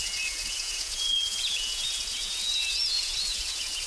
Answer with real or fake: fake